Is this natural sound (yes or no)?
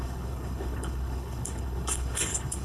no